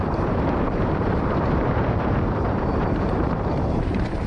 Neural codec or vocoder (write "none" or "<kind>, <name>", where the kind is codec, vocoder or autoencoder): vocoder, BigVGAN v2